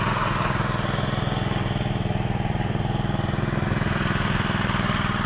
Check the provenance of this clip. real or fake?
real